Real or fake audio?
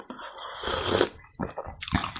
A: real